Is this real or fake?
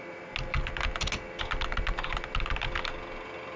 real